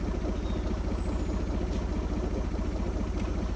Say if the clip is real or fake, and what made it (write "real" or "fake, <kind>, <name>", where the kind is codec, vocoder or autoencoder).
real